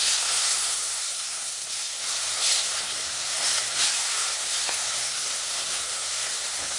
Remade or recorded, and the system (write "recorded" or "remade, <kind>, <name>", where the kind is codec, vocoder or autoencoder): remade, codec, SNAC